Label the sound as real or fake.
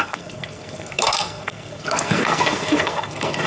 fake